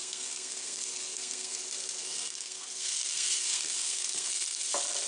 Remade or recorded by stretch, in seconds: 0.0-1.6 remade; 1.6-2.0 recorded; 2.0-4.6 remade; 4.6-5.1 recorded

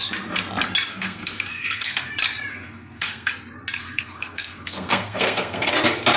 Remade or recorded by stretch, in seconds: 0.0-0.9 recorded; 0.9-2.1 remade; 2.1-2.5 recorded; 2.5-3.3 remade; 3.3-3.8 recorded; 3.8-5.7 remade; 5.7-6.2 recorded

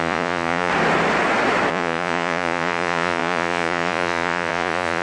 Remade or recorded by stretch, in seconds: 0.0-0.7 remade; 0.7-1.7 recorded; 1.7-5.0 remade

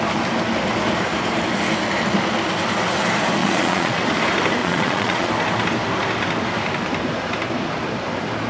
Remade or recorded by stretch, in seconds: 0.0-3.4 recorded; 3.4-4.0 remade; 4.0-4.6 recorded; 4.6-5.3 remade; 5.3-8.5 recorded

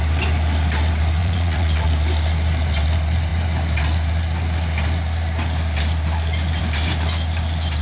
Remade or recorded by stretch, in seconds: 0.0-1.2 recorded; 1.2-1.9 remade; 1.9-7.8 recorded

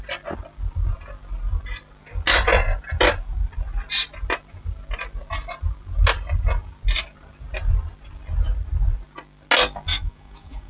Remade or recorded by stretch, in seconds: 0.0-9.9 recorded; 9.9-10.7 remade

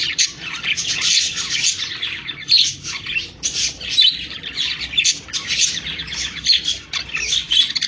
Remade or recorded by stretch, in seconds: 0.0-1.6 remade; 1.6-3.2 recorded; 3.2-7.9 remade

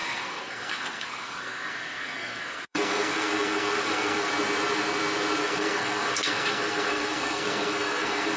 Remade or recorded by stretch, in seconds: 0.0-4.3 remade; 4.3-5.4 recorded; 5.4-8.4 remade